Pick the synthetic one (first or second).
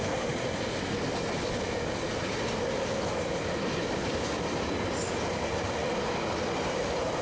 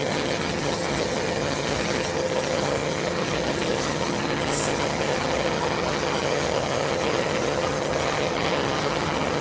second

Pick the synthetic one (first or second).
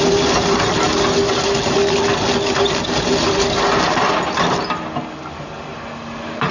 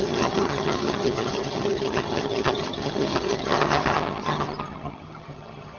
second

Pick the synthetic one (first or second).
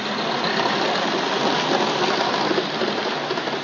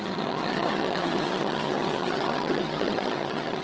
second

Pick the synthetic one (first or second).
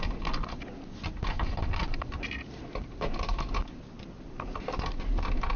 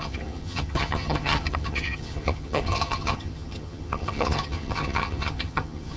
second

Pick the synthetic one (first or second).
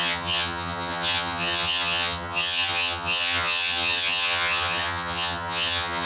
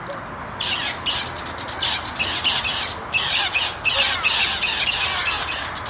first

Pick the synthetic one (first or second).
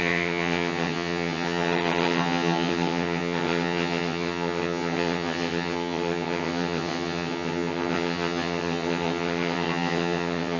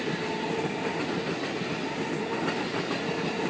first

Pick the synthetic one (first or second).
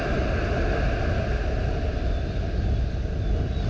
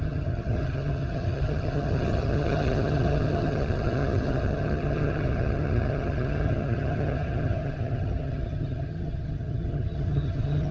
second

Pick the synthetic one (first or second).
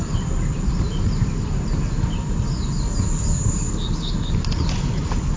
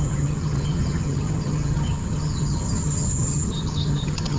second